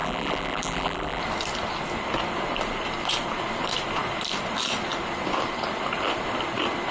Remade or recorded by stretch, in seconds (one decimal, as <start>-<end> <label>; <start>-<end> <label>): 0.0-1.2 remade; 1.2-6.9 recorded